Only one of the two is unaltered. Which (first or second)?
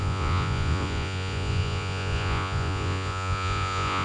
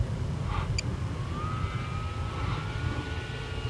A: second